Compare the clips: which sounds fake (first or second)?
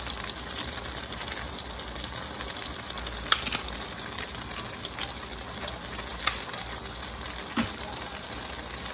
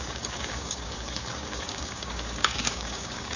second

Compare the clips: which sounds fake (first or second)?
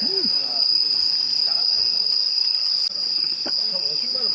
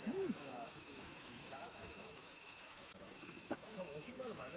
second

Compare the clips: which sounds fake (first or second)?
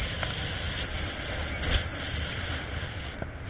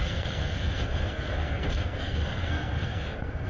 second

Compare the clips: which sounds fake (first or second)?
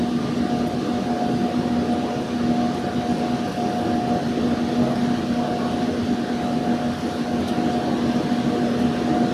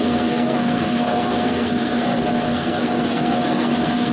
second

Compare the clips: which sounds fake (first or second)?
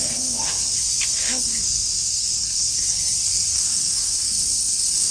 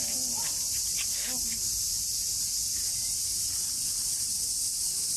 first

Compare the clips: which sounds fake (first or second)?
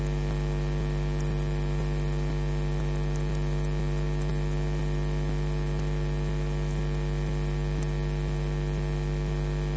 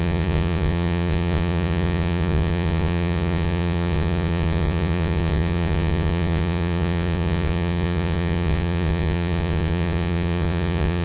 second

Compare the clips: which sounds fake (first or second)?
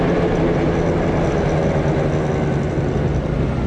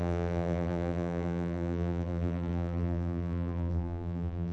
second